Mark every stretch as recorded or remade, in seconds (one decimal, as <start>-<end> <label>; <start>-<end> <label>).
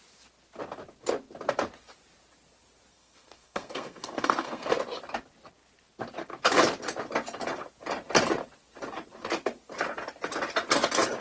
0.0-2.9 recorded; 2.9-4.7 remade; 4.7-11.2 recorded